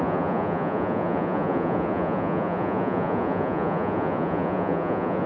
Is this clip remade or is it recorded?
remade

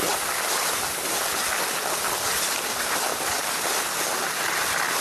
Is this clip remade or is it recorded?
recorded